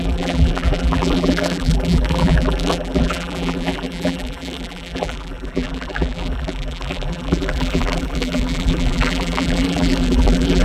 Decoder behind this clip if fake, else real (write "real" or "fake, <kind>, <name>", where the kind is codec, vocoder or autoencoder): fake, vocoder, BigVGAN v2